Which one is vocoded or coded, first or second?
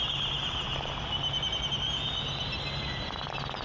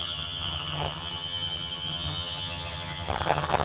second